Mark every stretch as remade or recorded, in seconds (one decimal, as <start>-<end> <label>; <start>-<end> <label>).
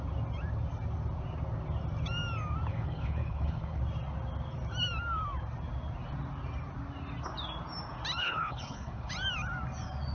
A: 0.0-2.7 recorded; 2.7-3.8 remade; 3.8-8.2 recorded; 8.2-9.1 remade; 9.1-10.1 recorded